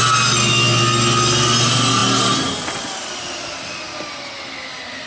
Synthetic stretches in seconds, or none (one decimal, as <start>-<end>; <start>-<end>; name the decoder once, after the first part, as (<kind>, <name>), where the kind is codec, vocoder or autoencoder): none